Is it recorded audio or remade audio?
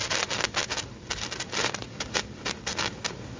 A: recorded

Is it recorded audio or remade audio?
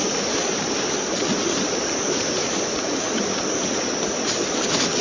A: recorded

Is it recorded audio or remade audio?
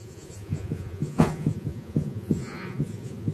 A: remade